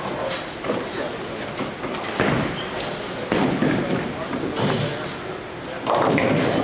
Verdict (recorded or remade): recorded